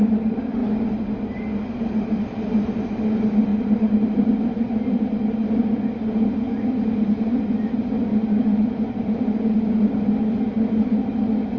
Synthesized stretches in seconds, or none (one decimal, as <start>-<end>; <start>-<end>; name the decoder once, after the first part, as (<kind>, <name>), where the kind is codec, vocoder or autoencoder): 3.5-5.5 (vocoder, BigVGAN v2); 8.1-10.2